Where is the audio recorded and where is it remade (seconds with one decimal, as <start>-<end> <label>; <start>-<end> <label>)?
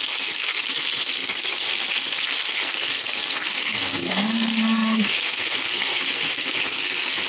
0.0-7.3 remade